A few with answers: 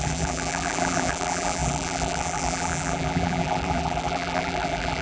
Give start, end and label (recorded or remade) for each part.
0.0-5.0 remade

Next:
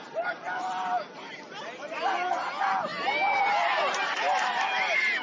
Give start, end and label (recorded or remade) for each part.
0.0-5.2 recorded

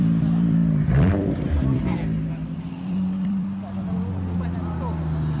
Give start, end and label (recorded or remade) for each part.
0.0-5.4 remade

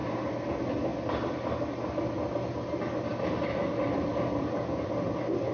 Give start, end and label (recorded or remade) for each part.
0.0-0.5 remade; 0.5-0.9 recorded; 0.9-1.9 remade; 1.9-3.1 recorded; 3.1-4.6 remade; 4.6-5.5 recorded

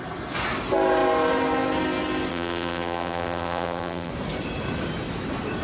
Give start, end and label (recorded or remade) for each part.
0.0-2.3 recorded; 2.3-4.1 remade; 4.1-5.6 recorded

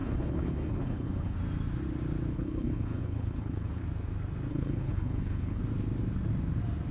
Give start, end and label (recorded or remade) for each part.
0.0-1.4 remade; 1.4-2.3 recorded; 2.3-3.8 remade; 3.8-4.5 recorded; 4.5-5.6 remade; 5.6-6.9 recorded

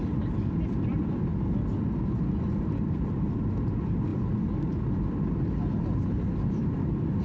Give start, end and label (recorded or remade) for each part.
0.0-1.3 remade; 1.3-2.4 recorded; 2.4-7.2 remade